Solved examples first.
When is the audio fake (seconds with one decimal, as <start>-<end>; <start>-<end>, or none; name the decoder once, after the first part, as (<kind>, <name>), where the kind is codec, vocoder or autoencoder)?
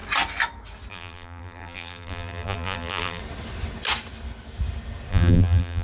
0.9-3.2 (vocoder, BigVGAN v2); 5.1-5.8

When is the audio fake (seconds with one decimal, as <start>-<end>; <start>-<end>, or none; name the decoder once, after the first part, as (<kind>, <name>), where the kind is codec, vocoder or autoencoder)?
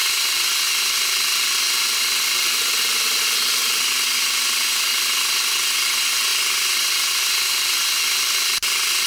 none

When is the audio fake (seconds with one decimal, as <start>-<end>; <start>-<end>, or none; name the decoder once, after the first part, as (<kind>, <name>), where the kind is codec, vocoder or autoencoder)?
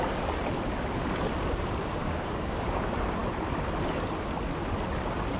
2.0-2.8 (codec, DAC)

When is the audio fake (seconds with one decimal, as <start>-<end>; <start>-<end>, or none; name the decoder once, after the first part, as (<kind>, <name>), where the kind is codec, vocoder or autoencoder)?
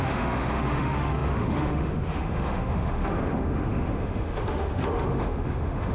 0.0-5.9 (autoencoder, DAC-VAE)